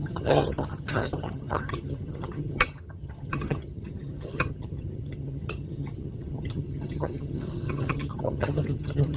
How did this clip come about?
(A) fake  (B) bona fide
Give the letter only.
A